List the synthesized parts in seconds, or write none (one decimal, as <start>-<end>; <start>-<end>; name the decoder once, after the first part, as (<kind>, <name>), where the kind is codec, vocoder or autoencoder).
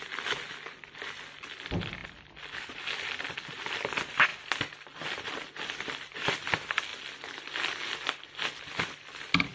none